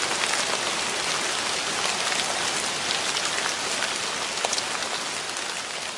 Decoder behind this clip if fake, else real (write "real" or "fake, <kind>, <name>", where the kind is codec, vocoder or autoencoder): real